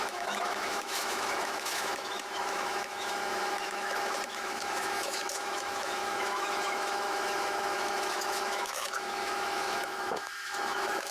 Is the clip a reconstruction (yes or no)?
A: yes